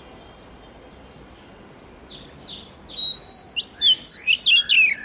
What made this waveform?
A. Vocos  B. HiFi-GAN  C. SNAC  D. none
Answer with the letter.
D